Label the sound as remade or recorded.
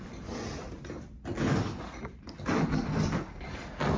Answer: recorded